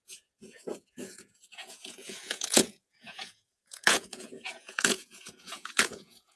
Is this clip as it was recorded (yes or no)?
no